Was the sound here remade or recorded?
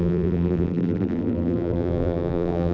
remade